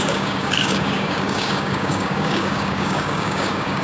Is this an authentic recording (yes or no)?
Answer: no